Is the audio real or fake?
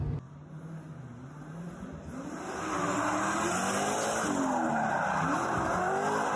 real